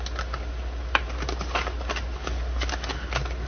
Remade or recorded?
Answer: recorded